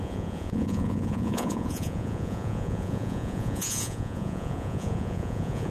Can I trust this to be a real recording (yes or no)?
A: no